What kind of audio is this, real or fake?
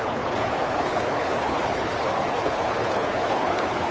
fake